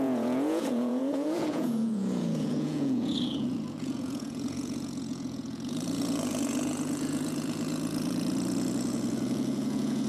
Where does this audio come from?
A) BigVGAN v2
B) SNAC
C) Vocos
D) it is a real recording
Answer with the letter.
C